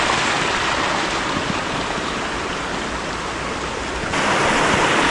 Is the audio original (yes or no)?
yes